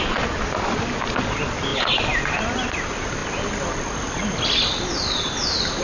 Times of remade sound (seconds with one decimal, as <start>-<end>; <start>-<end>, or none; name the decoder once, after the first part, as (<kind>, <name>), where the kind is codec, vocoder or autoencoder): none